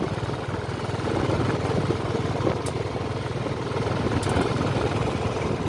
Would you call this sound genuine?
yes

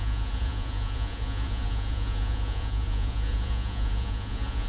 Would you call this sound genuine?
no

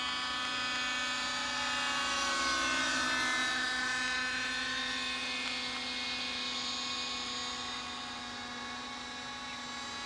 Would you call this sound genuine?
yes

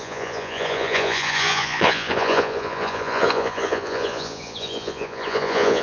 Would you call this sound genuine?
no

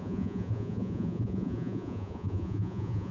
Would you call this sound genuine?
no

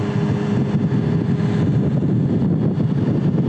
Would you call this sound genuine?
yes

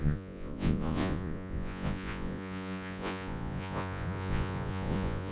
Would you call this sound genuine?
no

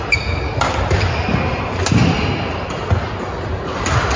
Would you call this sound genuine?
yes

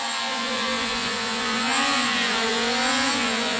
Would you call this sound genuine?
no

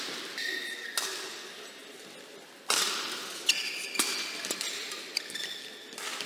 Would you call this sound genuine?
yes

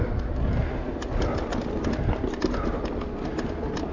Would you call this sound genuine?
yes